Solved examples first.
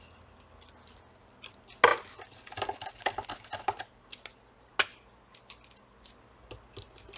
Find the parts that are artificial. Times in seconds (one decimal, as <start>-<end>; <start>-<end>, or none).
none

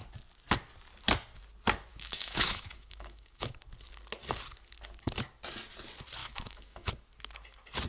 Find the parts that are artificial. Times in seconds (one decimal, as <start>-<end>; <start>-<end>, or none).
1.9-3.6; 6.2-6.9

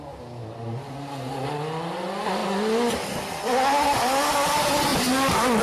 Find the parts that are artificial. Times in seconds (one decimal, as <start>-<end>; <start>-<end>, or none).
none